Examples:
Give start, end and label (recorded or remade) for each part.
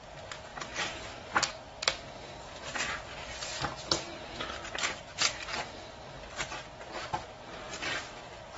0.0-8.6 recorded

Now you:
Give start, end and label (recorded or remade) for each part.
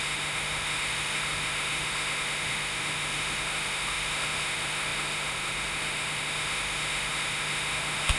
0.0-8.2 remade